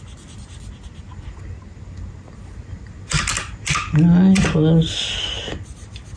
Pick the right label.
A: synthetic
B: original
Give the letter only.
B